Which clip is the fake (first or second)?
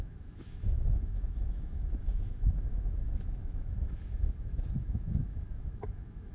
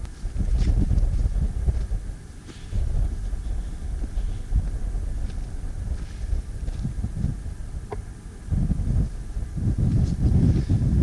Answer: first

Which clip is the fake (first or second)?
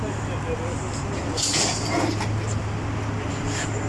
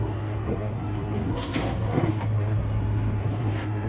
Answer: second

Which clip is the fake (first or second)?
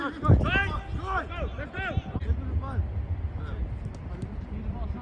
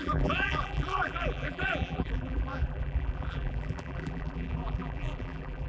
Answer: second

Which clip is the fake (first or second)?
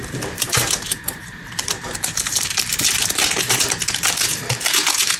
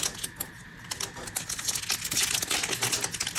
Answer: first